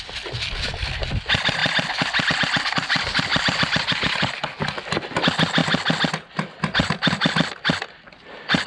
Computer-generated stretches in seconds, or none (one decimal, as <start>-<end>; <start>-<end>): none